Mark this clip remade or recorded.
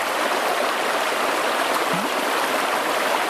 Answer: recorded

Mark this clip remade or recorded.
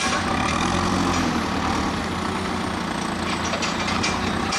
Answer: recorded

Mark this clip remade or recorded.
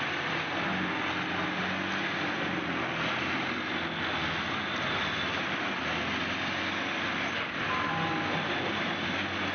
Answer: recorded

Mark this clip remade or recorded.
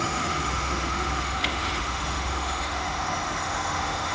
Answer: remade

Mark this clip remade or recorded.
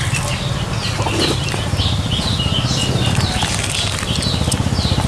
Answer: recorded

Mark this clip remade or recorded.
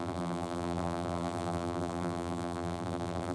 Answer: remade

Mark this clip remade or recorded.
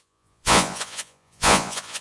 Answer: remade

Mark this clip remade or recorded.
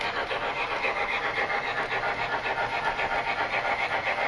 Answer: recorded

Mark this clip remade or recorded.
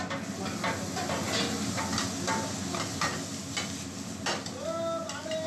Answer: recorded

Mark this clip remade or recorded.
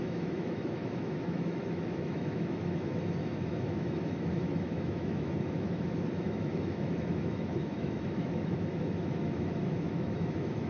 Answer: remade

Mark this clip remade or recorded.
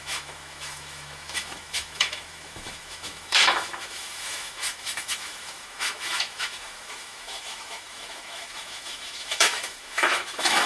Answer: remade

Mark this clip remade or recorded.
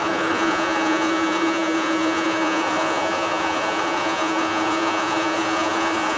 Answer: remade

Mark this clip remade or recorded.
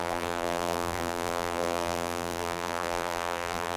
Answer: remade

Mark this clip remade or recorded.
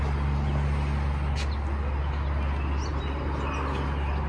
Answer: recorded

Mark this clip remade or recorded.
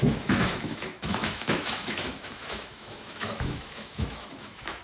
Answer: remade